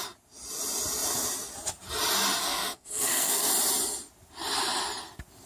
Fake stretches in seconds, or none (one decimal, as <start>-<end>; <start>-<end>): 2.4-3.5